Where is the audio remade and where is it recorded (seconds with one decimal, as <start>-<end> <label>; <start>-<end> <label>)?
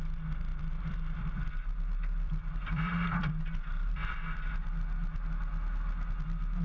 0.0-0.5 recorded; 0.5-4.5 remade; 4.5-6.6 recorded